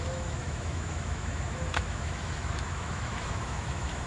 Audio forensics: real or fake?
fake